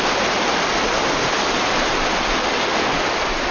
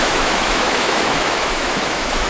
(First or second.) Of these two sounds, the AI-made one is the second